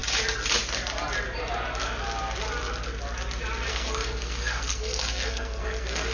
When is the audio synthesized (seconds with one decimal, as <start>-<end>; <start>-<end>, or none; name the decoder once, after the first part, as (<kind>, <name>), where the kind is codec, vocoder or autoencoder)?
3.7-6.1 (codec, SNAC)